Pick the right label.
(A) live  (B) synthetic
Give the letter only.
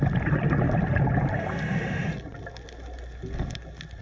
A